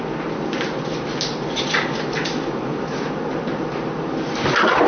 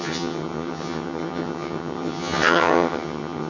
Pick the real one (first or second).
first